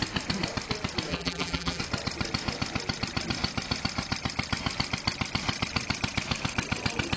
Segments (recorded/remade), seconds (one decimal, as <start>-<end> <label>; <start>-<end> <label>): 0.0-1.1 recorded; 1.1-1.8 remade; 1.8-7.2 recorded